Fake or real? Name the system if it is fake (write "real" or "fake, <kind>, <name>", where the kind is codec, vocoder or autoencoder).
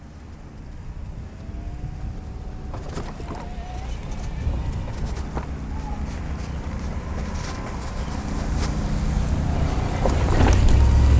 real